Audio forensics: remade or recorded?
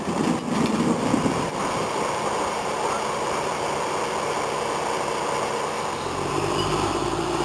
recorded